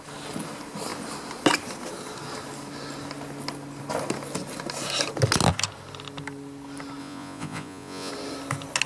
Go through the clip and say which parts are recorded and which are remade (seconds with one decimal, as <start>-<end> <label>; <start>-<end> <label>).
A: 0.0-7.0 recorded; 7.0-8.1 remade; 8.1-8.9 recorded